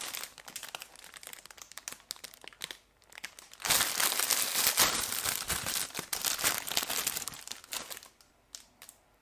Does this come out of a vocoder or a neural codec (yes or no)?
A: no